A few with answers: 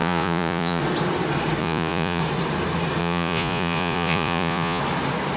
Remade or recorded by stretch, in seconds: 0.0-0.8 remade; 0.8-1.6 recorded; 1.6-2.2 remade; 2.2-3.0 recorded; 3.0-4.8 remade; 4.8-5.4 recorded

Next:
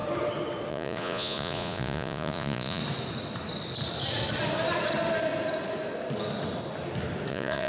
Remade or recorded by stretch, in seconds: 0.0-0.7 recorded; 0.7-2.8 remade; 2.8-7.3 recorded; 7.3-7.7 remade

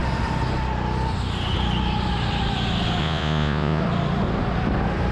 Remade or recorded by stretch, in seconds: 0.0-3.0 recorded; 3.0-3.8 remade; 3.8-5.1 recorded

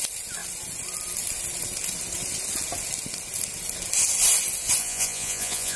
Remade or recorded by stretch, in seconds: 0.0-4.8 recorded; 4.8-5.8 remade

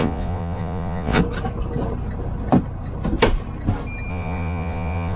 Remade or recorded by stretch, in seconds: 0.0-1.2 remade; 1.2-4.1 recorded; 4.1-5.2 remade

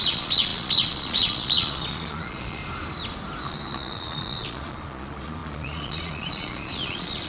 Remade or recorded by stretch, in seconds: 0.0-2.6 remade; 2.6-3.4 recorded; 3.4-7.3 remade